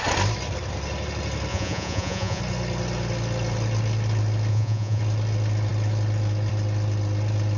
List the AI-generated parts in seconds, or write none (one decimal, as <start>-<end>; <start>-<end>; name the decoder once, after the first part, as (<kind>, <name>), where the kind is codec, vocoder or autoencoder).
1.5-2.4 (vocoder, Vocos); 4.5-5.0